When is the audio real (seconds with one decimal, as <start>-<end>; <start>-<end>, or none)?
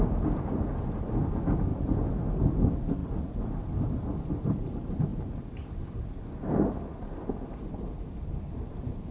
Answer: 0.0-9.1